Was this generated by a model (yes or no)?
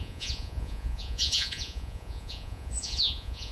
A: yes